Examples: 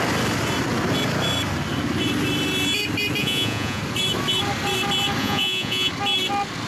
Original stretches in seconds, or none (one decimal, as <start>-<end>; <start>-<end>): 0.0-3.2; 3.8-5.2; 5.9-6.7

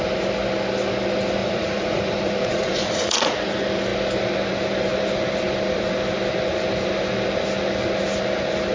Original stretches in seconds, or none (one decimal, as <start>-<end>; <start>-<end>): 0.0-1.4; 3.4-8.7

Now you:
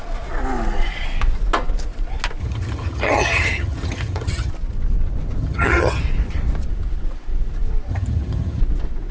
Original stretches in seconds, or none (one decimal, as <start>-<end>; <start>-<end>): 0.0-2.4; 4.5-5.4; 6.0-7.9; 8.6-9.1

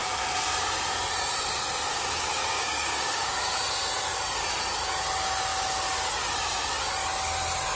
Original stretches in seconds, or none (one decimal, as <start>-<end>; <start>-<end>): 0.0-1.9; 3.6-7.8

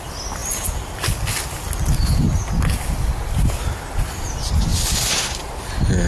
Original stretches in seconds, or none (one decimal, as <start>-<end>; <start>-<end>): 0.0-6.1

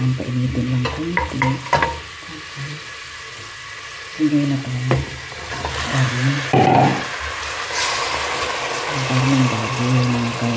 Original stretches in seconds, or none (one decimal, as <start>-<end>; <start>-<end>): 0.0-10.6

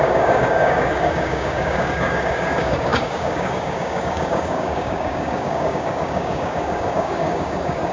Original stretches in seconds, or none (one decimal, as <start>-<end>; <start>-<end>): none